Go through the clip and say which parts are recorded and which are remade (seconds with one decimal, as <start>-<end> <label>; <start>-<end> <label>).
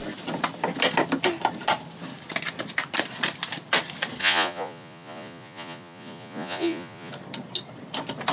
0.0-4.2 recorded; 4.2-7.1 remade; 7.1-8.3 recorded